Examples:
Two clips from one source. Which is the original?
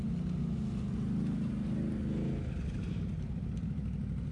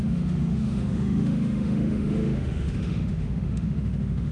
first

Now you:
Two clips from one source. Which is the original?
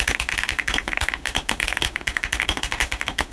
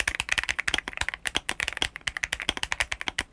second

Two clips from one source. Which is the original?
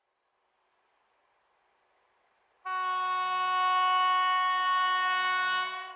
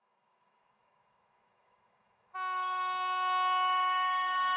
first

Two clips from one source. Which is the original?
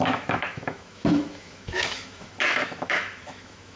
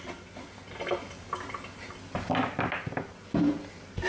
second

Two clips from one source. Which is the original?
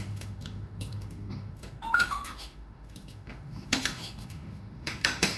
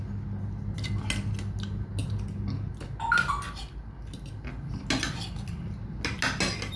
second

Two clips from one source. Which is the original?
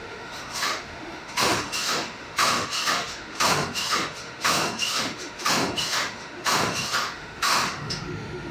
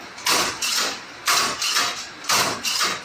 second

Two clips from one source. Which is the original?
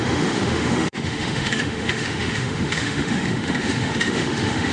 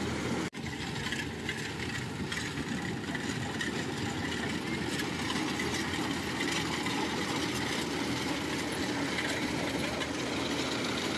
second